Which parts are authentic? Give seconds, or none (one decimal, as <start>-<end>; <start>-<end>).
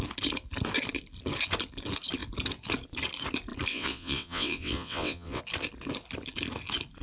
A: 0.0-3.7; 5.4-7.0